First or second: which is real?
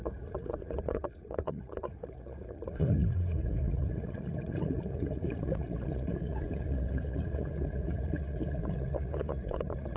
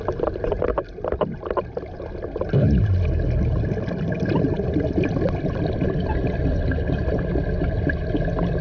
second